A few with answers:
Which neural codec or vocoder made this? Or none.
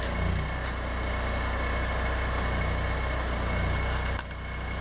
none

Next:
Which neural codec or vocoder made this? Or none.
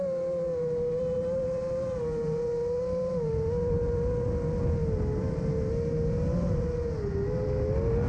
none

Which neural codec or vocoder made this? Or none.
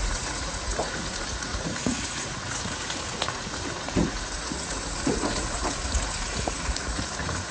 vocoder, Vocos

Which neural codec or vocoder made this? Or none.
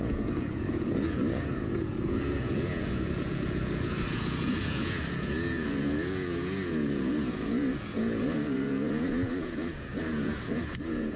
vocoder, Vocos